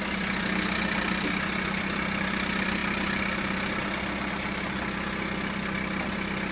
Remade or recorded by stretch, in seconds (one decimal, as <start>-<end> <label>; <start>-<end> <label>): 0.0-6.5 recorded